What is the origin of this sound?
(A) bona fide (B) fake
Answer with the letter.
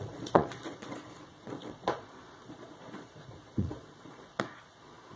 B